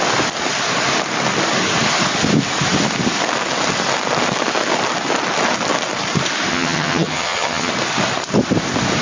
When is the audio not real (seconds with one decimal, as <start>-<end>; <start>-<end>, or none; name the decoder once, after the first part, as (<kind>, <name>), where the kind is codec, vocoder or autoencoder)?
6.5-7.7 (vocoder, HiFi-GAN)